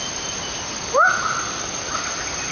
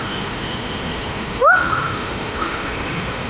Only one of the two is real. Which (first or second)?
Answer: first